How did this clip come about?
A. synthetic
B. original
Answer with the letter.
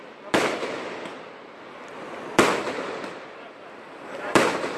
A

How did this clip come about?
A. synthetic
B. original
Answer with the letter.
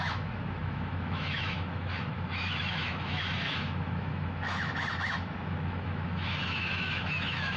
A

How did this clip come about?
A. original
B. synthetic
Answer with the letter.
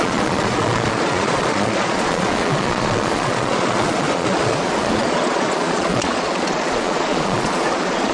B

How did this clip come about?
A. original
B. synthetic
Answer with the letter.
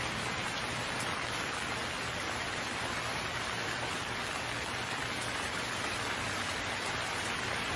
A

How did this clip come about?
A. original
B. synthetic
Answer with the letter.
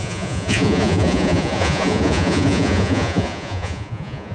B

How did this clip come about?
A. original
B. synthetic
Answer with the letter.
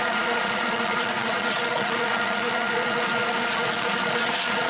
B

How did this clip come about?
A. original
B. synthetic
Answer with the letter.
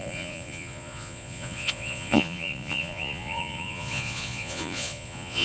B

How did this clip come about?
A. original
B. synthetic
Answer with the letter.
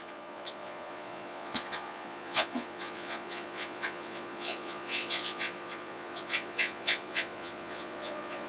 B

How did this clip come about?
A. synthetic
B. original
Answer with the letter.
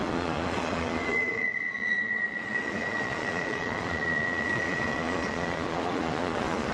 A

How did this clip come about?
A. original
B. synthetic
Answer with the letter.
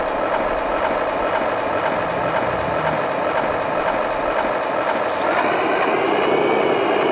A